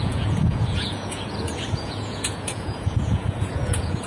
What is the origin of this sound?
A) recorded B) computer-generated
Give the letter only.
B